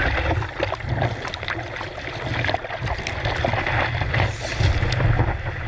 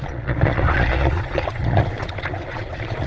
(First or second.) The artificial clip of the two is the second